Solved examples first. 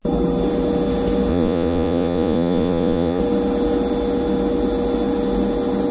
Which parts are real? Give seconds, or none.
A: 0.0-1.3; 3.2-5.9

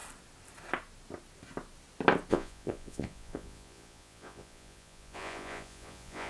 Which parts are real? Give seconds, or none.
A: 0.0-2.3

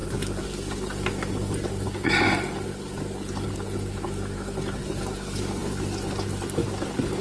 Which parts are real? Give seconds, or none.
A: 0.0-7.2

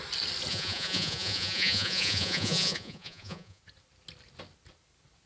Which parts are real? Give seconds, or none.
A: 0.0-0.5; 3.6-5.3

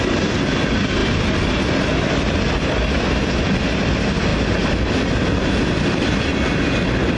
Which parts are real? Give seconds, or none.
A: 0.0-7.2

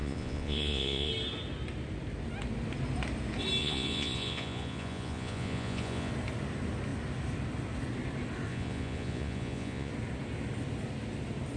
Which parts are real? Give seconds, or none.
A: 1.1-3.6; 6.1-8.5; 9.9-11.6